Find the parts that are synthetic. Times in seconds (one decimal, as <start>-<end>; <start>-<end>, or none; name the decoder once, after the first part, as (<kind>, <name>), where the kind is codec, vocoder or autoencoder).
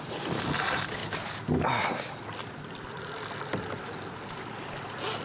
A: none